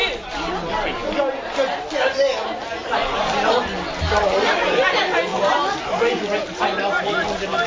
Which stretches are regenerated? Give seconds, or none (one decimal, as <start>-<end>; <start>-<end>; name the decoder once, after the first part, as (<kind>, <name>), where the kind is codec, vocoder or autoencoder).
4.2-4.7 (vocoder, Vocos)